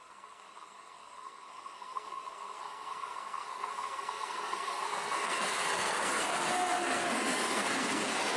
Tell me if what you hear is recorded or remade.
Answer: remade